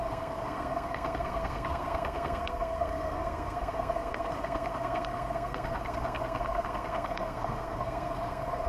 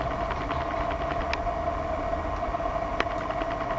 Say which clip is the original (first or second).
second